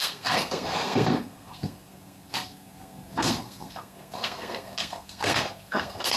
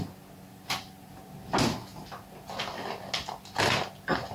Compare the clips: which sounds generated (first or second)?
first